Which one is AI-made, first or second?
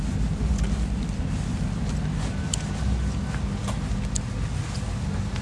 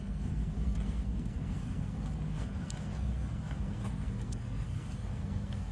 second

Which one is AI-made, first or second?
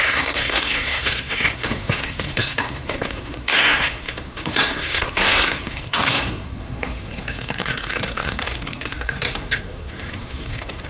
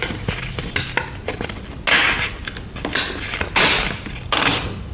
first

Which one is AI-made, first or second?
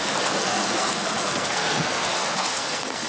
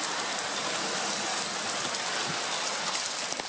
first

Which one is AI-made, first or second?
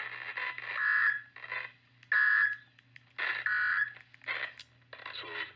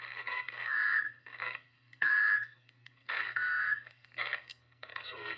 second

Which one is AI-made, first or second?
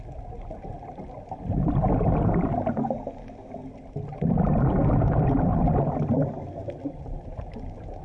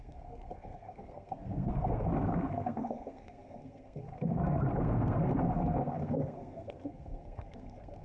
second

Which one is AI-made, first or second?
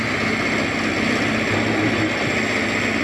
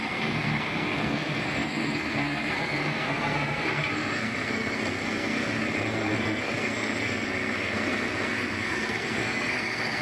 second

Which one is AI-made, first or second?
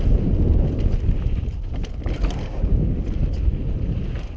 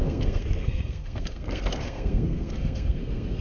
second